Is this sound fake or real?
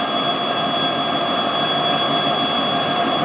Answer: real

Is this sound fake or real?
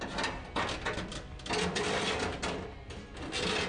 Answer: real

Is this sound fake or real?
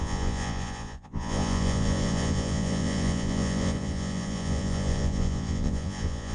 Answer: fake